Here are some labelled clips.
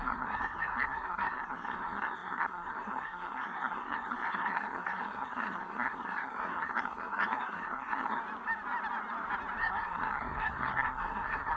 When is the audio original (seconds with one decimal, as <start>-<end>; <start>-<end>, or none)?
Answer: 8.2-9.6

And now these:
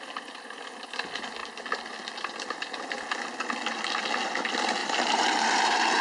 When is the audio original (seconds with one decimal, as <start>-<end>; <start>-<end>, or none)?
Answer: 0.0-4.8

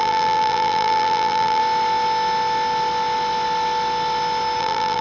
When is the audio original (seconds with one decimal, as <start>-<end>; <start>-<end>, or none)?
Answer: 1.6-4.6